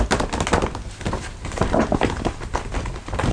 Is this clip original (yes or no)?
yes